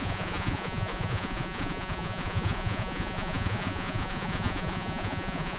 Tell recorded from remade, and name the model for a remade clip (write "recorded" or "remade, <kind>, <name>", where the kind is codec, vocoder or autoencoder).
remade, vocoder, Vocos